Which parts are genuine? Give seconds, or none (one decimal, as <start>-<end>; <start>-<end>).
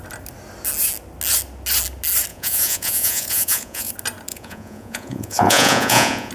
0.0-2.3; 3.9-4.3